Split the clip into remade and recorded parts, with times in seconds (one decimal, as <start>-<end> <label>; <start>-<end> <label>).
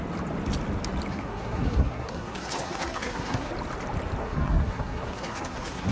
0.0-1.1 recorded; 1.1-3.5 remade; 3.5-4.2 recorded; 4.2-5.9 remade